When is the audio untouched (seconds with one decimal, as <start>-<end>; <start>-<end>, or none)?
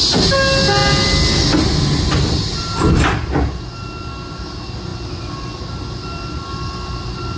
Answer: 0.0-7.4